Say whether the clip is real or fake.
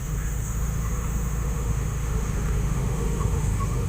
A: fake